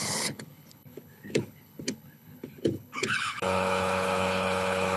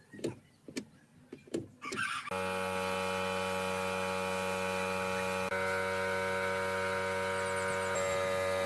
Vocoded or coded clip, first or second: first